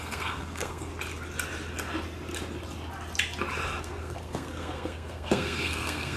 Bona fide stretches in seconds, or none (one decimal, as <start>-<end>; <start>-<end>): 0.9-3.8

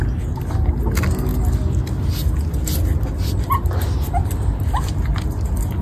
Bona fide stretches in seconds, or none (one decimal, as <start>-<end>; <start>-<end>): 0.0-5.8